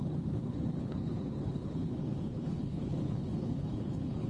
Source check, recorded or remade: remade